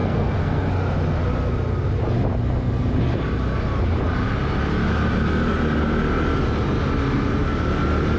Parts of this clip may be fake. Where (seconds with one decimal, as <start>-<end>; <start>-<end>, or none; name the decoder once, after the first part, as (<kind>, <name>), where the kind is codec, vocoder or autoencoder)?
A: 0.0-0.7 (codec, SNAC)